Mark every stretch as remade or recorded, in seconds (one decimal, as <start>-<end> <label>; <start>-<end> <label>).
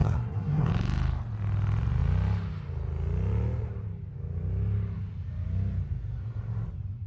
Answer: 0.0-0.7 remade; 0.7-7.1 recorded